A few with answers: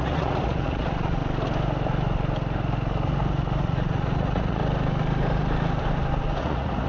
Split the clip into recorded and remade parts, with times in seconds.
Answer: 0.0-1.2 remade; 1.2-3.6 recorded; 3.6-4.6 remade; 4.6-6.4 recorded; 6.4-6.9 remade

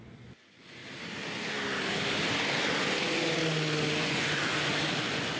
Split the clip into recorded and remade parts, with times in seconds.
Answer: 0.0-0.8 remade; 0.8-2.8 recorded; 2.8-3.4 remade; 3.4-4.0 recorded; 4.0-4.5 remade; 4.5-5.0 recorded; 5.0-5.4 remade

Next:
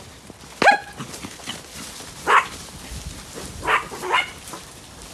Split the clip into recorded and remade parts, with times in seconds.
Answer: 0.0-5.1 recorded

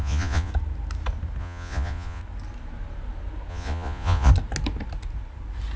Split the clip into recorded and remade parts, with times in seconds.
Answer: 0.0-0.5 remade; 0.5-1.4 recorded; 1.4-2.2 remade; 2.2-3.5 recorded; 3.5-4.3 remade; 4.3-5.8 recorded

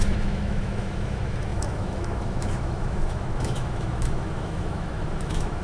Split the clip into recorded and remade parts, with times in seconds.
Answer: 0.0-5.6 remade